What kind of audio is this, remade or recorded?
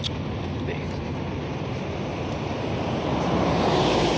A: remade